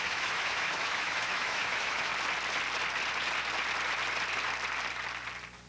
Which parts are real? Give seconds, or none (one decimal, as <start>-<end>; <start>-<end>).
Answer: 2.1-5.7